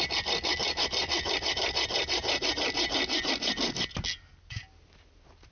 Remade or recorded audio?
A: recorded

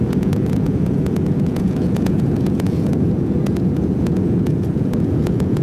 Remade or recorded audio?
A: remade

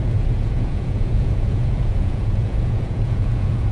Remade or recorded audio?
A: remade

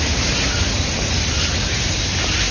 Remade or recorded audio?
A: recorded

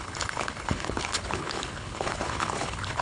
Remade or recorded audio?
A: remade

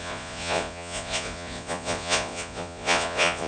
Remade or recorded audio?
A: remade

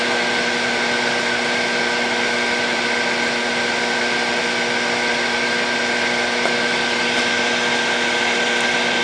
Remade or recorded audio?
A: recorded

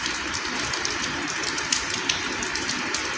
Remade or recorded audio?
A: remade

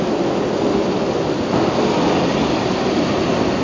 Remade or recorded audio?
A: recorded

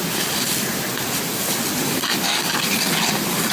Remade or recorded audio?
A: recorded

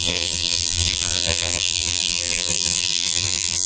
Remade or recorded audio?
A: remade